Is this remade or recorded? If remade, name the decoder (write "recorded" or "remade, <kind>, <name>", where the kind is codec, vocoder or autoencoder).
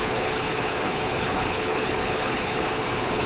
remade, codec, HILCodec